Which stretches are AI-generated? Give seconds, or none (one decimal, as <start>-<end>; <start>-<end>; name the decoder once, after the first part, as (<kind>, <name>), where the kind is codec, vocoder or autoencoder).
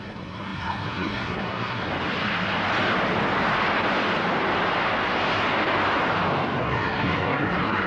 0.0-1.9 (codec, SNAC); 6.6-7.9